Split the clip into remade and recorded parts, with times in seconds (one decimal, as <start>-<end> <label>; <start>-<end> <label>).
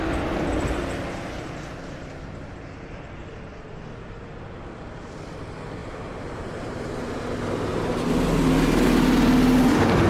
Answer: 0.0-5.8 recorded; 5.8-7.2 remade; 7.2-7.7 recorded; 7.7-8.3 remade; 8.3-10.1 recorded